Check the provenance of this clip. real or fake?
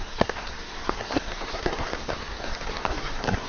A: fake